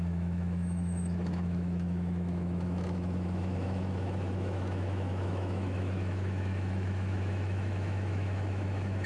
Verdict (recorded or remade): remade